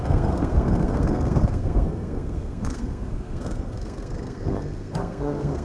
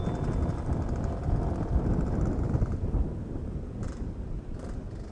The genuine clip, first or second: second